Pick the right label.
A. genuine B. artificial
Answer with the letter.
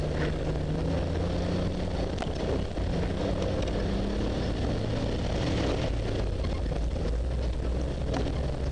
A